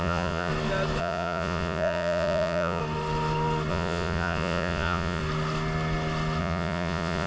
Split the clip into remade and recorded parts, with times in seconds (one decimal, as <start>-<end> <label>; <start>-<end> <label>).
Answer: 0.0-0.5 remade; 0.5-1.0 recorded; 1.0-2.8 remade; 2.8-3.7 recorded; 3.7-5.2 remade; 5.2-6.4 recorded; 6.4-7.3 remade